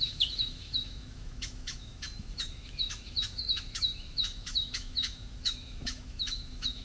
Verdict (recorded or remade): remade